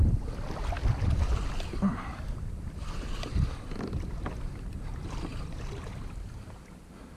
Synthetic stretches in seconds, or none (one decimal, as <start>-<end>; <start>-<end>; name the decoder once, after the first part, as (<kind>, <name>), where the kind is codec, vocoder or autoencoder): none